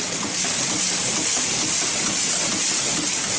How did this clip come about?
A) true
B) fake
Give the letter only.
A